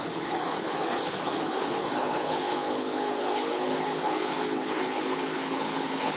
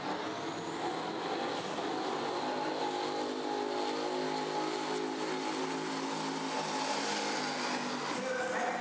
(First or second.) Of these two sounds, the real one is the second